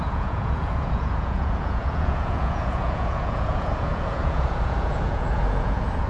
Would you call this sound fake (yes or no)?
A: yes